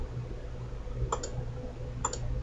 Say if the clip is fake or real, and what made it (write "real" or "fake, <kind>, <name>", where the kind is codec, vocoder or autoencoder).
real